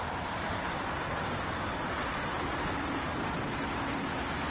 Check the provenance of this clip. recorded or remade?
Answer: recorded